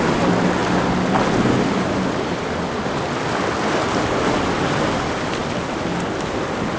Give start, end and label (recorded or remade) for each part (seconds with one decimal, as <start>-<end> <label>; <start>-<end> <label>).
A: 0.0-6.8 recorded

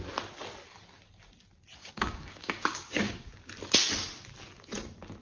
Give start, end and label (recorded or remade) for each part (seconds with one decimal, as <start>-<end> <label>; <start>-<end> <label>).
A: 0.0-1.8 recorded; 1.8-3.5 remade; 3.5-5.2 recorded

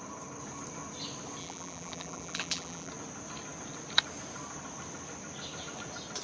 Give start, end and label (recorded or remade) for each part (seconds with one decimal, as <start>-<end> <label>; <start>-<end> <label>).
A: 0.0-1.4 recorded; 1.4-2.9 remade; 2.9-6.2 recorded

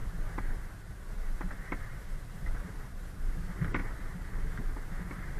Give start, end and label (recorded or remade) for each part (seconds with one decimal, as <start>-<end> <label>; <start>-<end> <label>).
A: 0.0-3.2 remade; 3.2-5.4 recorded

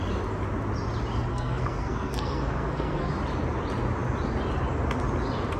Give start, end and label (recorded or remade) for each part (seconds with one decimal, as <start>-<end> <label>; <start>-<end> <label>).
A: 0.0-1.3 recorded; 1.3-3.1 remade; 3.1-5.6 recorded

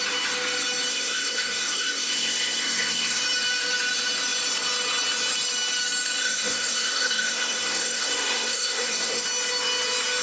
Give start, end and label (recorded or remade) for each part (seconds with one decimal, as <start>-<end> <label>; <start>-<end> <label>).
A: 0.0-0.9 recorded; 0.9-3.2 remade; 3.2-6.2 recorded; 6.2-9.2 remade; 9.2-10.2 recorded